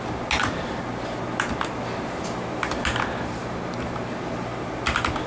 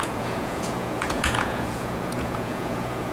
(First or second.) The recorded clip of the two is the first